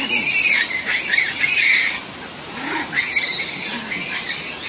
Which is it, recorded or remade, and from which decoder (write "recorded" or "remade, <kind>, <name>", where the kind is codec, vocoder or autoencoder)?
recorded